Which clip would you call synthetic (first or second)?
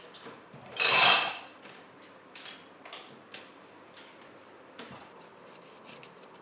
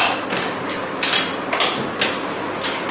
first